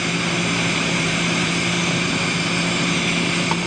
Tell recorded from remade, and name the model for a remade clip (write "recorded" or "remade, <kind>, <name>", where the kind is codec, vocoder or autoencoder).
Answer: remade, vocoder, BigVGAN v2